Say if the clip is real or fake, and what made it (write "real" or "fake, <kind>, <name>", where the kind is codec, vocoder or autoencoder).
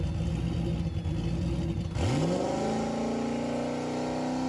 real